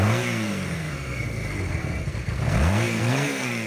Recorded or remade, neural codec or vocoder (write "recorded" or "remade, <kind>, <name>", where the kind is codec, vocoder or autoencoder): remade, codec, SNAC